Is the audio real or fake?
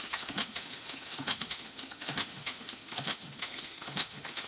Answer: fake